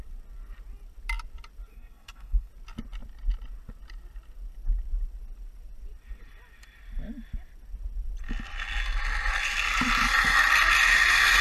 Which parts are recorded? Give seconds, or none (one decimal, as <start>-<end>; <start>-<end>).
0.0-1.7; 2.5-11.4